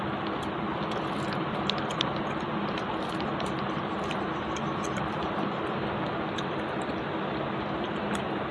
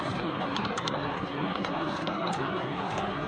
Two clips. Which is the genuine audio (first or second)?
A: first